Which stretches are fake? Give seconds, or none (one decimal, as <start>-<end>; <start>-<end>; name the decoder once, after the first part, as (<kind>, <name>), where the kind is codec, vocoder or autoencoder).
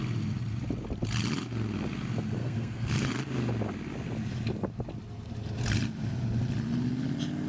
2.4-3.1 (codec, SNAC)